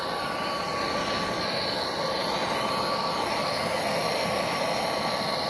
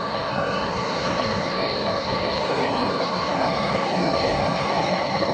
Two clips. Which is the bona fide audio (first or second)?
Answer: first